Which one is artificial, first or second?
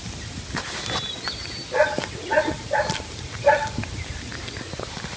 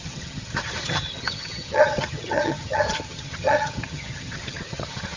second